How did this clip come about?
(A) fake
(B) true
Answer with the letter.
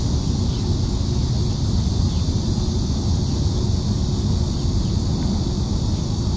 B